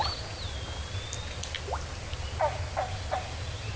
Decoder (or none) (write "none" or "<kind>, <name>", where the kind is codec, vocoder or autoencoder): none